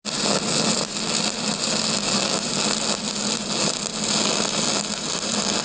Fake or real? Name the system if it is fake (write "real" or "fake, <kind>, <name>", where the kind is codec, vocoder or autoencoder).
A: real